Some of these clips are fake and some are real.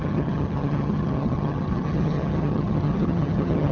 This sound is fake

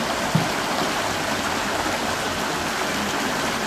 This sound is real